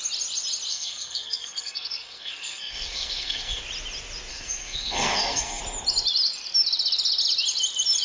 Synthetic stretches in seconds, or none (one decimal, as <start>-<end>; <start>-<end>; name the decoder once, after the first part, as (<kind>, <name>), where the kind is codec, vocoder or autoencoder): 0.7-3.6 (codec, SNAC); 4.3-5.6